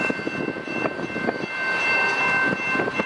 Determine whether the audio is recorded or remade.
recorded